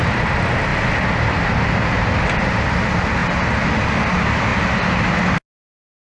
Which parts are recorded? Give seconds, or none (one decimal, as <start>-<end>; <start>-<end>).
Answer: 0.0-6.0